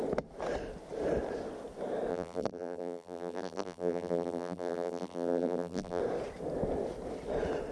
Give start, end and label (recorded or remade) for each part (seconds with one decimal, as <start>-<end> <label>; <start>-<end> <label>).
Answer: 0.0-2.1 recorded; 2.1-6.0 remade; 6.0-7.7 recorded